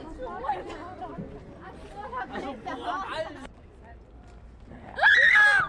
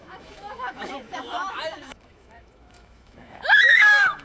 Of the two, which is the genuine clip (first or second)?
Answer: first